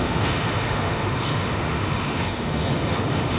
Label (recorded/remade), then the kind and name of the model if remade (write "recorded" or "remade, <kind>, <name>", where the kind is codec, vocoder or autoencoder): remade, autoencoder, DAC-VAE